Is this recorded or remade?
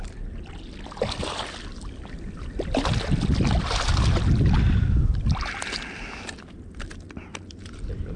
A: recorded